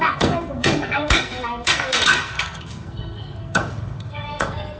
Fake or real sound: fake